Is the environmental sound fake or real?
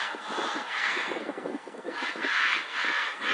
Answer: fake